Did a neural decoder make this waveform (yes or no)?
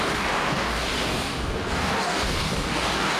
yes